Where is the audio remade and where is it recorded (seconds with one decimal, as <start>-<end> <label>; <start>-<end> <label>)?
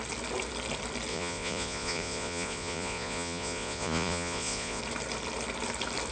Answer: 0.0-1.1 recorded; 1.1-4.8 remade; 4.8-6.1 recorded